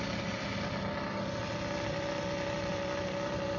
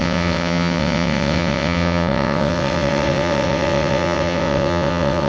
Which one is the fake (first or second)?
second